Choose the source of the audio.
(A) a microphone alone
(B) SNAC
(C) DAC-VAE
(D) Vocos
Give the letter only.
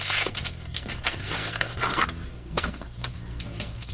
B